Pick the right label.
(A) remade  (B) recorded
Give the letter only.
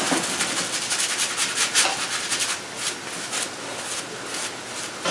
B